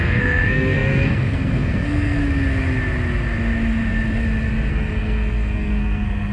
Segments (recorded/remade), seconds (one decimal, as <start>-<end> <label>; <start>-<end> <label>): 0.0-2.2 remade; 2.2-4.7 recorded; 4.7-6.3 remade